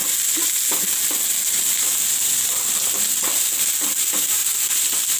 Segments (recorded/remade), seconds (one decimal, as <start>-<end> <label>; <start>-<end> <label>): 0.0-5.2 recorded